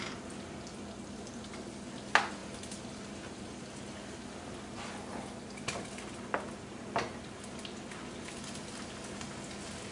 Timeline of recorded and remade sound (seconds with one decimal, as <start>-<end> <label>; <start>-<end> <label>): 0.0-9.9 recorded